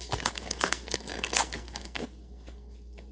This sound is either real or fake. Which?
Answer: fake